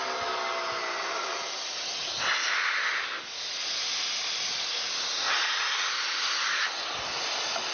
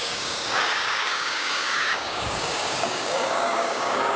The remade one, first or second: second